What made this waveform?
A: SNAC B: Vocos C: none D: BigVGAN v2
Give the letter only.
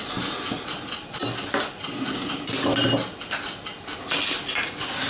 C